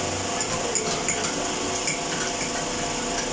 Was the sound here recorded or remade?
recorded